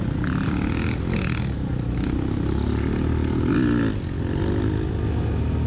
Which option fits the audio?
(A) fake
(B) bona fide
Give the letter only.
B